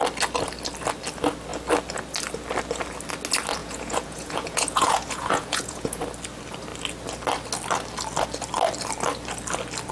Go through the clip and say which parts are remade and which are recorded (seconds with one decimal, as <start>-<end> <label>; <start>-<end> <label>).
0.0-3.6 recorded; 3.6-6.0 remade; 6.0-9.9 recorded